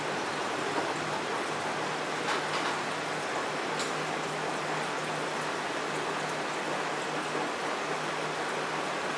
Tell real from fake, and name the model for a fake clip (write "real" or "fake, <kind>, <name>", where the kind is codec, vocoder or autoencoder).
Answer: real